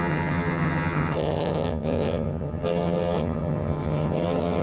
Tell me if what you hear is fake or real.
fake